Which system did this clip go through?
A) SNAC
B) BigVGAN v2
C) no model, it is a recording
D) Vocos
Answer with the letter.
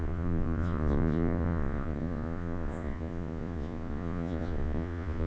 D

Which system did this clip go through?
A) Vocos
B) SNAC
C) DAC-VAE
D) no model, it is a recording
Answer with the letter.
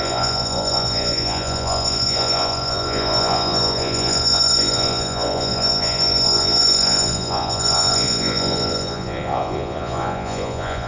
A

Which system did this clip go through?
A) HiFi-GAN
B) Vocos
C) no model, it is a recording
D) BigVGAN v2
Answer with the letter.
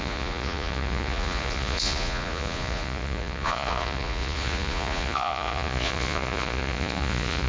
B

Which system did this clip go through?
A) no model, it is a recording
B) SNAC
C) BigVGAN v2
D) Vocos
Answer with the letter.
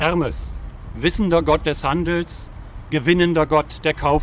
D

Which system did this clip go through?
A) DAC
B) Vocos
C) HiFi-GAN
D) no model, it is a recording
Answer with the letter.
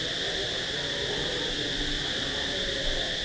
D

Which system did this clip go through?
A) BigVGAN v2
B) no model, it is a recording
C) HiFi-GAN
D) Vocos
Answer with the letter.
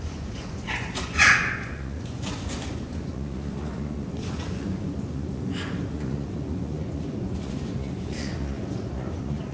D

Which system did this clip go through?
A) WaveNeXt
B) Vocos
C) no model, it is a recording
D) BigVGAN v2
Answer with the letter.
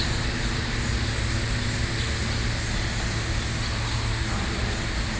C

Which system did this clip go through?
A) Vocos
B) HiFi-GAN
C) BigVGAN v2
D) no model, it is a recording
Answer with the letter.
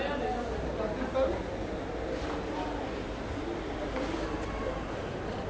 D